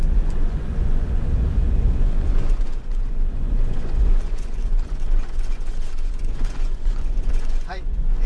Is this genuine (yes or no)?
no